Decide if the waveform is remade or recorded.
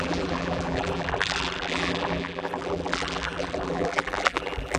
remade